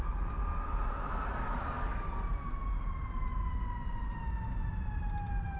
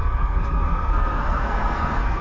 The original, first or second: first